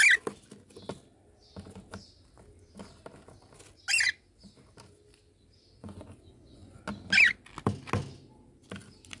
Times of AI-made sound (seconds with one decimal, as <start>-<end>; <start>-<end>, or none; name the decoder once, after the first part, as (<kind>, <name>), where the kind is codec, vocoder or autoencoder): 5.8-6.8 (vocoder, Vocos)